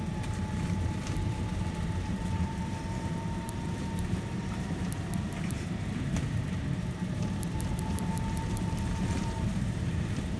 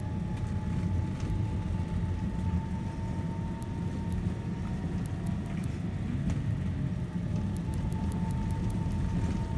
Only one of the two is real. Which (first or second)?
second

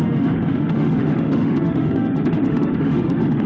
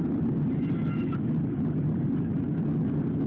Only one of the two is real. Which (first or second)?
second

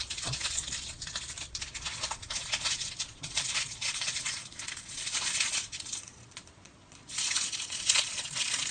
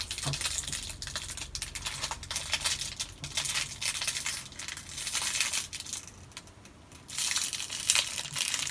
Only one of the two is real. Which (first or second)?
second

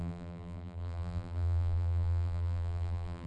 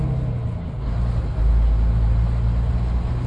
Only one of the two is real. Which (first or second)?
second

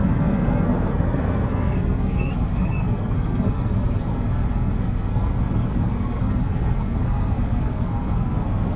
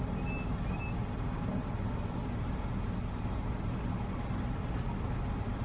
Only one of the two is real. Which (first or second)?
second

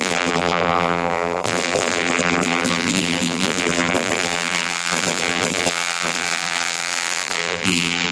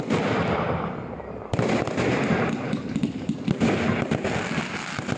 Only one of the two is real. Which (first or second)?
second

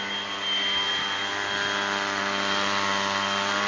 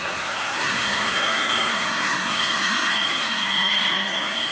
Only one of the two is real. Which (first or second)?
first